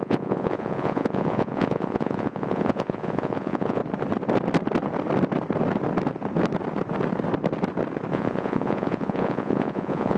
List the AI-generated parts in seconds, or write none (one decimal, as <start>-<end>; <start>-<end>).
0.0-3.8; 8.1-10.2